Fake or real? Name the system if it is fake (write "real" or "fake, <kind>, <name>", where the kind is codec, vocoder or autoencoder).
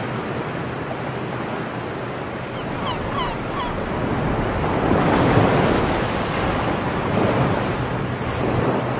real